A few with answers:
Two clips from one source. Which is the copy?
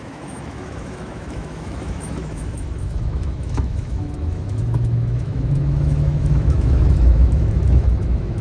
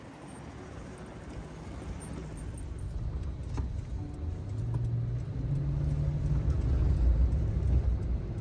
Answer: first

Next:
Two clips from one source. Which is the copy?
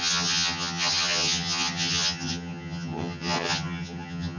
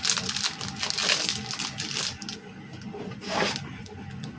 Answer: first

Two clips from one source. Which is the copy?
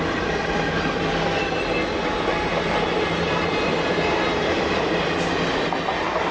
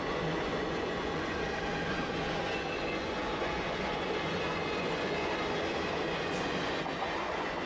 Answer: second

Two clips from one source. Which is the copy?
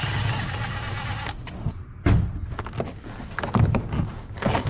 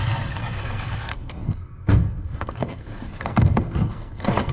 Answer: second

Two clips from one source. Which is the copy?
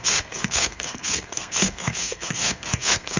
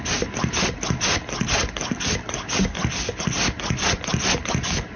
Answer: first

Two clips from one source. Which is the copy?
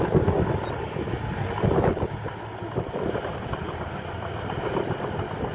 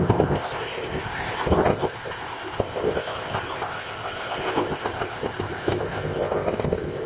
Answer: second